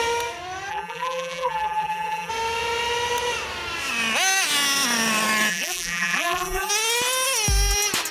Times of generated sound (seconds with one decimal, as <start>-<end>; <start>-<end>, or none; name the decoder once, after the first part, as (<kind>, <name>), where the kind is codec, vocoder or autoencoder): 0.7-2.3 (vocoder, BigVGAN v2); 5.5-6.7